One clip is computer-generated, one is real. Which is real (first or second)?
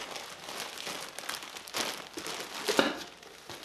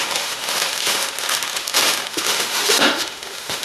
first